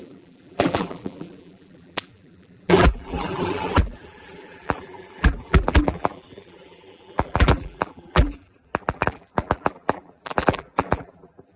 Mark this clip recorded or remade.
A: remade